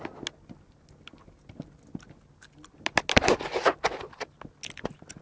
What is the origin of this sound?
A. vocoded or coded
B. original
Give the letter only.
B